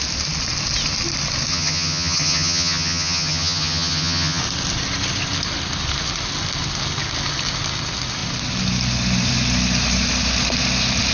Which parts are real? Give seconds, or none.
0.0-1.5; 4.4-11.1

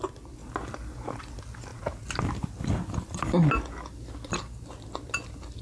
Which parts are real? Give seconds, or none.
0.0-5.6

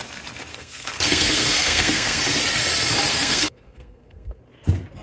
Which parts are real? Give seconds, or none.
0.0-0.5; 2.2-3.1; 4.4-5.0

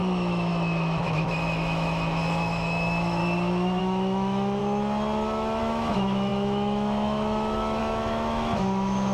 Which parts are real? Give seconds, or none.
3.2-3.8; 4.6-5.6

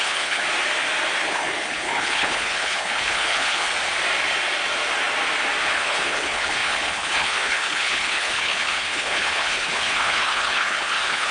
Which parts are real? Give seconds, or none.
0.4-1.2; 3.7-5.6